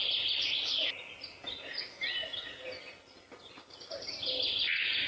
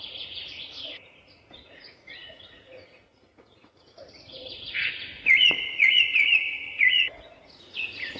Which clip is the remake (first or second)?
second